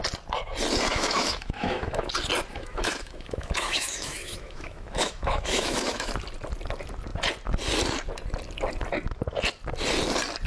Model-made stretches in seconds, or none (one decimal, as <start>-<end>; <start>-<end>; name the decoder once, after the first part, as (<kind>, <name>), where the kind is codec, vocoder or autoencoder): 0.9-2.1 (autoencoder, DAC-VAE); 2.5-6.1

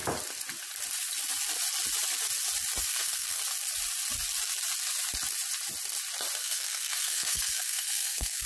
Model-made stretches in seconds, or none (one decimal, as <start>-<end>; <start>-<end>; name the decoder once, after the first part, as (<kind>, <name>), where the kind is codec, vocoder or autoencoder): 2.8-3.4 (codec, SNAC); 6.4-8.5

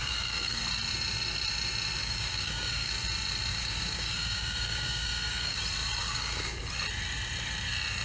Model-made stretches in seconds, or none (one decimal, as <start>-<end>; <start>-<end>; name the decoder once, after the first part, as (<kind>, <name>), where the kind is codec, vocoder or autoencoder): 0.0-0.6 (codec, DAC); 2.0-2.9; 3.5-5.6; 6.0-6.7

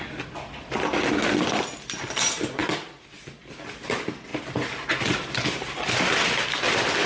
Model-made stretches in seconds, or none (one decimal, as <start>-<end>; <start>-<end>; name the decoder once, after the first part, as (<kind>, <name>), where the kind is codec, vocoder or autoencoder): none

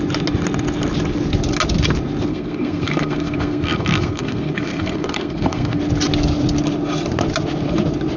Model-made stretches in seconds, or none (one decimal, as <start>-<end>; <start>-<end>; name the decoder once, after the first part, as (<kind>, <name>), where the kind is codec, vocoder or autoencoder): 2.3-5.8 (codec, SNAC)

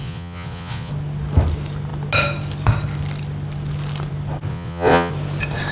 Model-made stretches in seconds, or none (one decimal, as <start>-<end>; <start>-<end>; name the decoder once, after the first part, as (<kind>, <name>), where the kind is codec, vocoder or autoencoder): 0.0-0.9 (vocoder, Vocos); 4.5-5.1

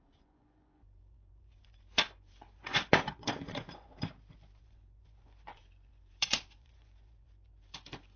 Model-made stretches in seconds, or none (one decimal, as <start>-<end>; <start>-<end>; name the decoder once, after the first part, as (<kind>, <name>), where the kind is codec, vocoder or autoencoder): 0.0-3.9 (vocoder, Vocos); 4.6-8.2

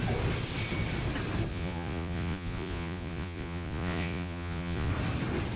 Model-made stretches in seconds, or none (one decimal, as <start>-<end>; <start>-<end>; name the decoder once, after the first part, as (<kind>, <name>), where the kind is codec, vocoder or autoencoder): 1.5-4.9 (vocoder, Vocos)